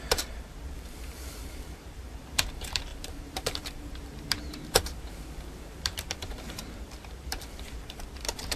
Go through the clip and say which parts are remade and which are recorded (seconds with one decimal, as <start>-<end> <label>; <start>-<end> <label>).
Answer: 0.0-8.6 remade